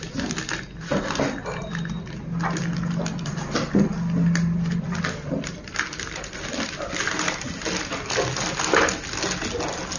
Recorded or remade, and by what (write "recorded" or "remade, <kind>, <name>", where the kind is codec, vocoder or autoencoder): recorded